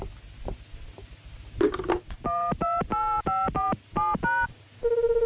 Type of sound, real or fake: real